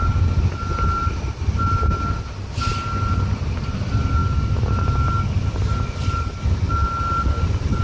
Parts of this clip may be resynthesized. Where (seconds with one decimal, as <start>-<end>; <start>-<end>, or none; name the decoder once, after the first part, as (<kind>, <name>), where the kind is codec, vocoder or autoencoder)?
none